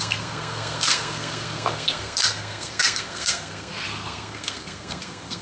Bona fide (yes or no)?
no